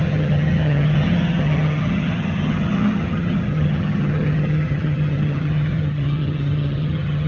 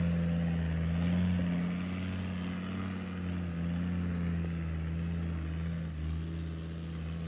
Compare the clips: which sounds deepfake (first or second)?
first